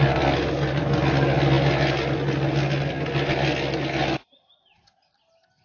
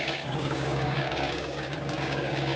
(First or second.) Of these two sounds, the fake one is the second